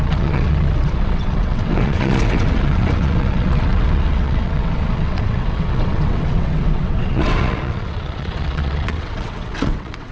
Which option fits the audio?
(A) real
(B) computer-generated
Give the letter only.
B